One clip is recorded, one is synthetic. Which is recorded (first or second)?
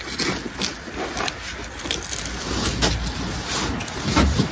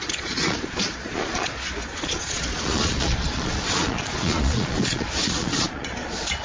first